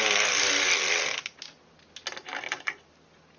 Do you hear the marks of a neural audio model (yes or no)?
no